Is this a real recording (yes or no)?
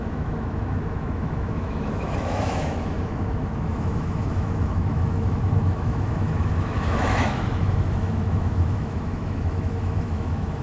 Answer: no